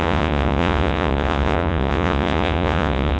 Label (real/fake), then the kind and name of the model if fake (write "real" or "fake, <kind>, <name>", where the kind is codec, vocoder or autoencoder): fake, vocoder, Vocos